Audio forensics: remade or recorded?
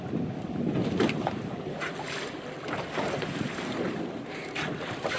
recorded